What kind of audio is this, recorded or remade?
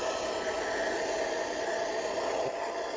recorded